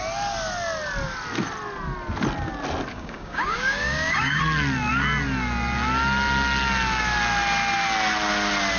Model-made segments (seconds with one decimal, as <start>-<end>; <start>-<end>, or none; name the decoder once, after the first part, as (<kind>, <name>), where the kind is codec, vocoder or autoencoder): 2.9-4.4 (codec, DAC)